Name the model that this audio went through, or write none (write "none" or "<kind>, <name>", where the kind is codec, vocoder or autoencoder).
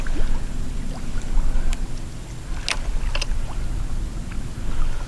none